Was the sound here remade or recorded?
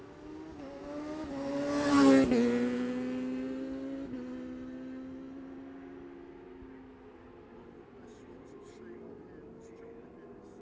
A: recorded